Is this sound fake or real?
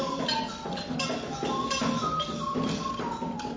real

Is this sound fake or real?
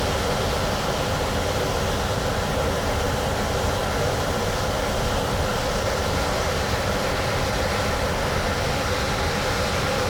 real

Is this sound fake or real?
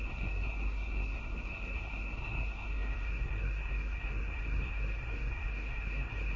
fake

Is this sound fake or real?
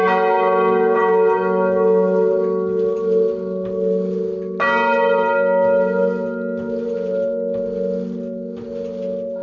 real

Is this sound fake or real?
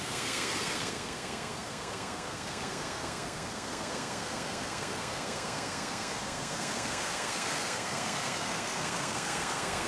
fake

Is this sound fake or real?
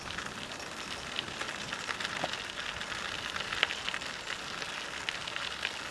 real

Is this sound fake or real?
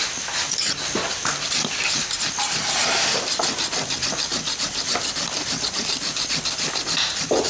real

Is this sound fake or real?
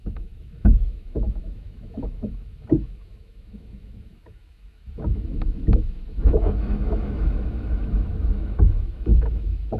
fake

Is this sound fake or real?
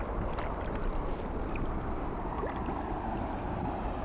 real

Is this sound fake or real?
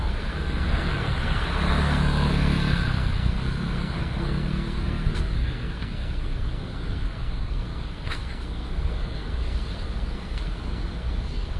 fake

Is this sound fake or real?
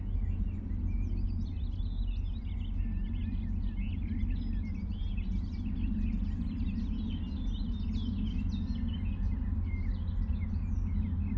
real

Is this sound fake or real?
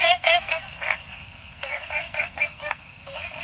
fake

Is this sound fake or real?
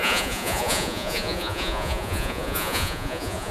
fake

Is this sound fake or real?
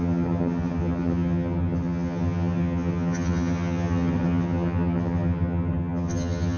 fake